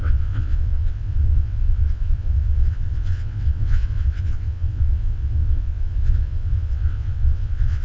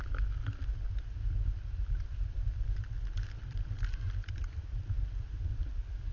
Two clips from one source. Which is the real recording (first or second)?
second